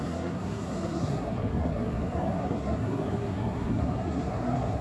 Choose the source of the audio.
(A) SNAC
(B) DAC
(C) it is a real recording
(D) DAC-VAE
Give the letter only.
A